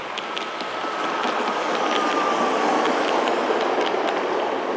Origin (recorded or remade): recorded